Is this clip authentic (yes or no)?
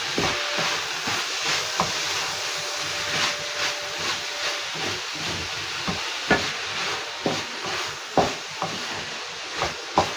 yes